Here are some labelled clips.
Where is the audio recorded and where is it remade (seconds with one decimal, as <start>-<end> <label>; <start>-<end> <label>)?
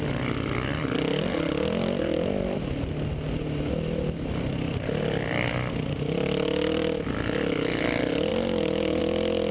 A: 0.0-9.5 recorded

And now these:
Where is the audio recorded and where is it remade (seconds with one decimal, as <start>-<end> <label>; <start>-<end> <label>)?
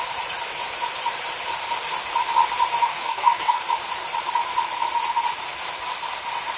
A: 0.0-2.8 recorded; 2.8-3.6 remade; 3.6-6.6 recorded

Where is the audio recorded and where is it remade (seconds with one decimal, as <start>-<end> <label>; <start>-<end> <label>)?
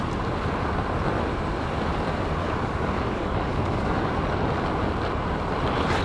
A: 0.0-2.4 recorded; 2.4-4.1 remade; 4.1-6.0 recorded